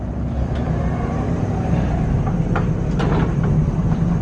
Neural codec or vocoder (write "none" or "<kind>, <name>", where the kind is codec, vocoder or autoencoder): vocoder, BigVGAN v2